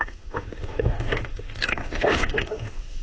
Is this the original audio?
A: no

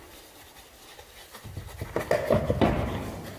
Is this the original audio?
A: yes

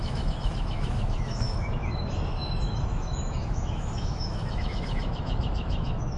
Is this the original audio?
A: no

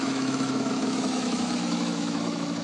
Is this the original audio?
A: no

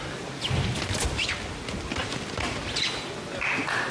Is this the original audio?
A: yes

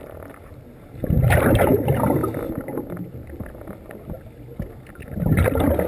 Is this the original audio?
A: yes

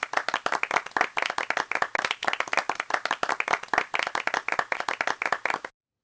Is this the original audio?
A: yes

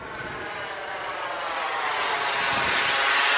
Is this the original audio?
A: yes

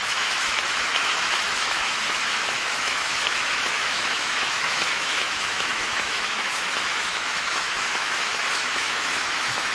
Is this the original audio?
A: no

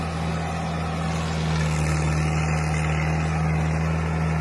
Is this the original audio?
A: yes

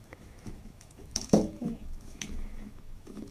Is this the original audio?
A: no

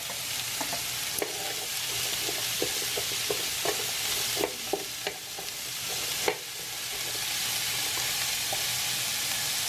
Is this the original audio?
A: yes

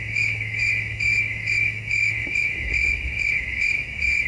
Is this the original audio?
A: no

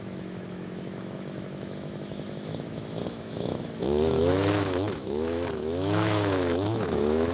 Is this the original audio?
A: no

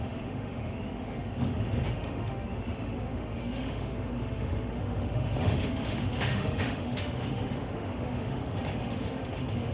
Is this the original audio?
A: no